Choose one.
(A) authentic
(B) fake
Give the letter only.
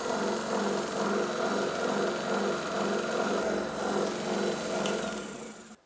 A